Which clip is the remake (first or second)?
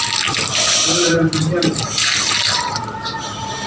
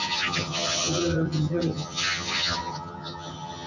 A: second